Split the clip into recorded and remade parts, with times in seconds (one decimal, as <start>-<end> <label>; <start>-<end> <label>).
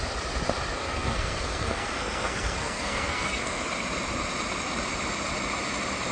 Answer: 0.0-0.8 recorded; 0.8-3.6 remade; 3.6-6.1 recorded